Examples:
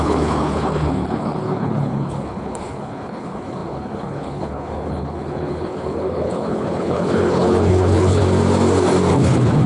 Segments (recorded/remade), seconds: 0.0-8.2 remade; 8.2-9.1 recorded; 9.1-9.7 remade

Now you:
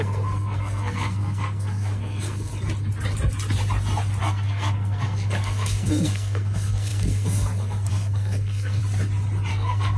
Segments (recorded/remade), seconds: 0.0-2.5 remade; 2.5-4.2 recorded; 4.2-8.8 remade; 8.8-9.5 recorded; 9.5-10.0 remade

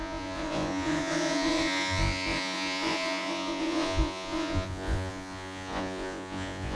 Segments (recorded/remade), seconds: 0.0-6.8 remade

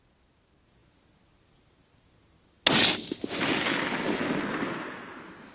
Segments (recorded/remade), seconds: 0.0-5.5 recorded

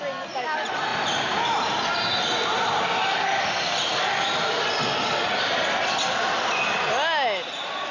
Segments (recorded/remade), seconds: 0.0-7.9 recorded

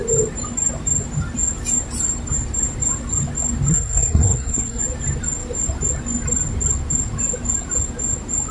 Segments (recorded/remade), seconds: 0.0-3.7 recorded; 3.7-4.8 remade; 4.8-8.5 recorded

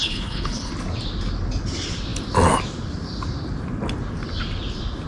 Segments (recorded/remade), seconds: 0.0-0.7 remade; 0.7-5.1 recorded